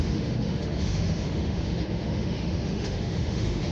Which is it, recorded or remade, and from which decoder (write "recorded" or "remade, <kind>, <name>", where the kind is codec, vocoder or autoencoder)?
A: remade, autoencoder, DAC-VAE